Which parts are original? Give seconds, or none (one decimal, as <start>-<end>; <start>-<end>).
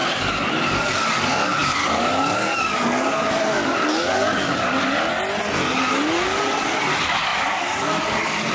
0.0-0.5; 5.1-5.8